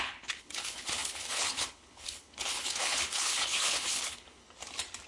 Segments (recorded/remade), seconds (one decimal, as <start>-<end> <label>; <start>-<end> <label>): 0.0-4.4 remade; 4.4-5.1 recorded